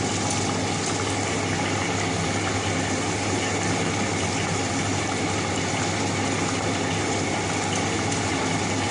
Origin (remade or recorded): recorded